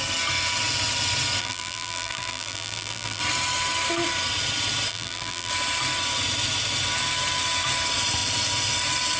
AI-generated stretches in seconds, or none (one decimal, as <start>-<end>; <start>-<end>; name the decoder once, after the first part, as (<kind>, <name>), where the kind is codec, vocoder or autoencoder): 1.4-3.2 (vocoder, BigVGAN v2); 4.9-5.5